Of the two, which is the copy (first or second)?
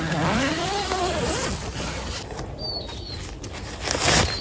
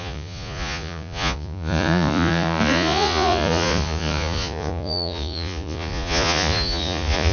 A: second